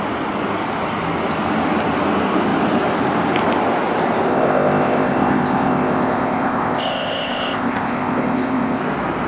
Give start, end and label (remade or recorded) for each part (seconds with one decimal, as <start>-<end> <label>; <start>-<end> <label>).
0.0-4.3 recorded; 4.3-8.8 remade; 8.8-9.3 recorded